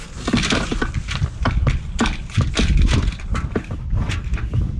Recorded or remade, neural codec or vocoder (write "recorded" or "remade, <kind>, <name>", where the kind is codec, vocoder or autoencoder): recorded